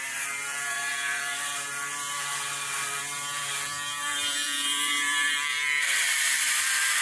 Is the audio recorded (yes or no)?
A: no